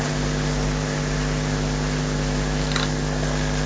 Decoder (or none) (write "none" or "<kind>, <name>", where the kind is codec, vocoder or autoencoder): none